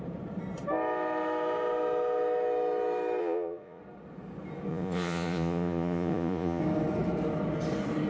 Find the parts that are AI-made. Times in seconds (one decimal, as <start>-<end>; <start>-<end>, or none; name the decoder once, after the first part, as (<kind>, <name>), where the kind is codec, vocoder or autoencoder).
3.2-3.8 (vocoder, Vocos); 4.7-6.6